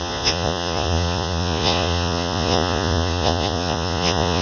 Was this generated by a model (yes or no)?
yes